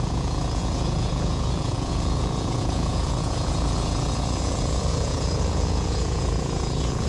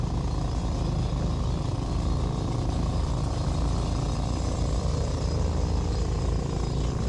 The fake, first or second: first